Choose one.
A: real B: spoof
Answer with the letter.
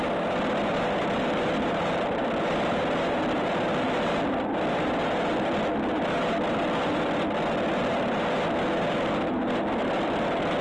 A